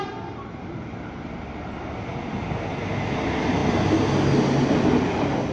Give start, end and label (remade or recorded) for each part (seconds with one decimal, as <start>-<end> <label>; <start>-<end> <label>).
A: 0.0-5.5 recorded